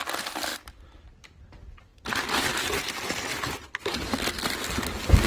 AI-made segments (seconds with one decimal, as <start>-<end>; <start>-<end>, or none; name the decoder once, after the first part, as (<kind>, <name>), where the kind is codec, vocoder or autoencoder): none